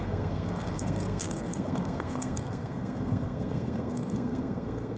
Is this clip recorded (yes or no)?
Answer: no